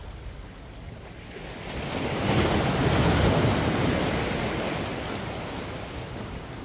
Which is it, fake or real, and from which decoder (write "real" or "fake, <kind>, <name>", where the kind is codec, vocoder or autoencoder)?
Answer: real